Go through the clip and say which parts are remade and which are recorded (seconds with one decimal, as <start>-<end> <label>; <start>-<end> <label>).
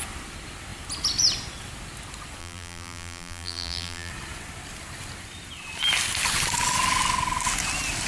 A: 0.0-2.4 recorded; 2.4-4.1 remade; 4.1-8.1 recorded